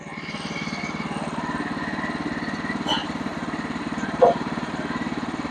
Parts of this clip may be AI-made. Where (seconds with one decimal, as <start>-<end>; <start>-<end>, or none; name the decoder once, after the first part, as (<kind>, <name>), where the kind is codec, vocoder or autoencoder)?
3.0-5.5 (vocoder, BigVGAN v2)